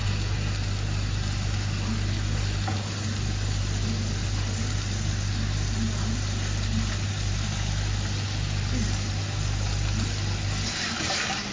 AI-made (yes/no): no